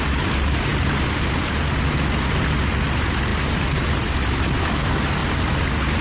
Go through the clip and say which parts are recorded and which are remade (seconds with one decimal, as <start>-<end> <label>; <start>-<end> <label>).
0.0-0.7 recorded; 0.7-1.4 remade; 1.4-3.3 recorded; 3.3-4.8 remade; 4.8-5.2 recorded; 5.2-6.0 remade